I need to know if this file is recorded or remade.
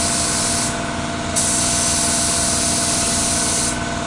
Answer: recorded